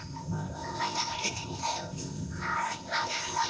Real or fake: fake